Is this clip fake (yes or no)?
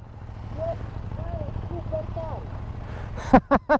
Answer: no